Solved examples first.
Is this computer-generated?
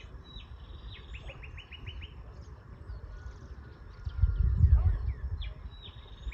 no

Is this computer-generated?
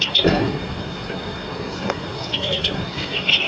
yes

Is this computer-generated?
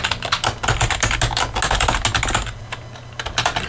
no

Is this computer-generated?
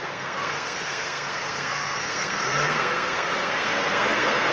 yes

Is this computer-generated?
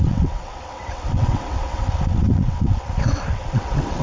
yes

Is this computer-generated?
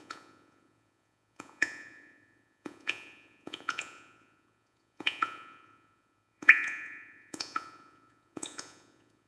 yes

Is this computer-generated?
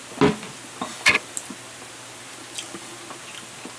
no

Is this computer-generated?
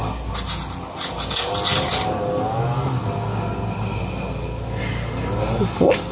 no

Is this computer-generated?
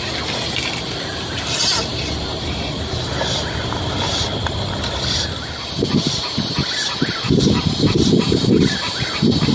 no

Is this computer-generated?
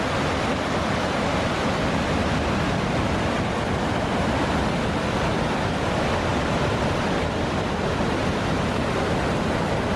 no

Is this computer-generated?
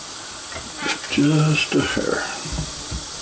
no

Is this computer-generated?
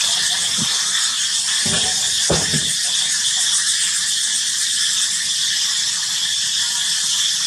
no